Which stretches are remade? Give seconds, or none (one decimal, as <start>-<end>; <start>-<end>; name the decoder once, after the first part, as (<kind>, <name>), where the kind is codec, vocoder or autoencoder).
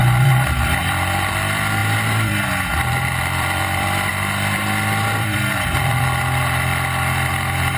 0.0-7.8 (vocoder, BigVGAN v2)